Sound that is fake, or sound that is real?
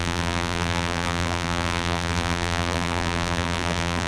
fake